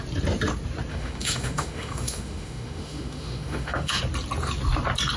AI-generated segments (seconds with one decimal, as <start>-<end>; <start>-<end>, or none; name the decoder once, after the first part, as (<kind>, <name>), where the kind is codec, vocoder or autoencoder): 0.9-4.0 (autoencoder, DAC-VAE)